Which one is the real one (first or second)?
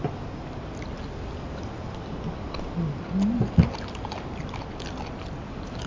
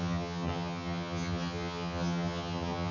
first